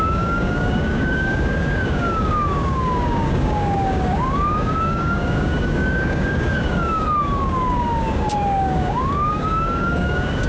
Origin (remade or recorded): remade